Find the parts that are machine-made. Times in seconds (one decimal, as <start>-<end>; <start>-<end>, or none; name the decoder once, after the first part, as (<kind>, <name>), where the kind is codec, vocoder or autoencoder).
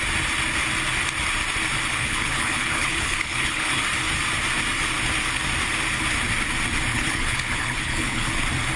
2.0-3.8 (codec, HILCodec); 6.9-8.3